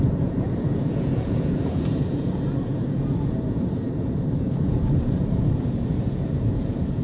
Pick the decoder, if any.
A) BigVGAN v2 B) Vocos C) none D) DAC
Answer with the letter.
B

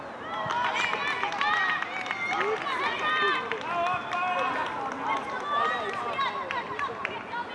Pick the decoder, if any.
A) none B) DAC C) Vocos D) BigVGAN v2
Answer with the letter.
A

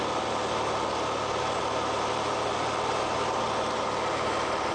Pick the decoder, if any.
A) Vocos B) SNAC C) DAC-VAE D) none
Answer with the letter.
D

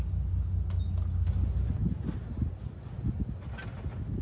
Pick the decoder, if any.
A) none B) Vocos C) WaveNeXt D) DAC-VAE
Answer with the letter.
A